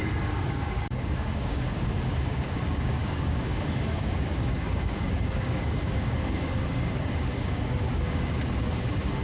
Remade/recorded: remade